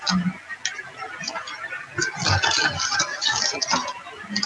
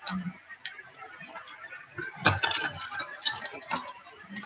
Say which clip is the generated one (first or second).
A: second